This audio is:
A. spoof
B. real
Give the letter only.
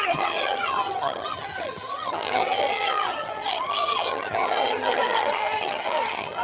A